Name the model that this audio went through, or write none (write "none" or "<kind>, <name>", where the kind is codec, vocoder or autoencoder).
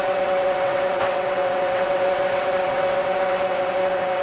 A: vocoder, WaveNeXt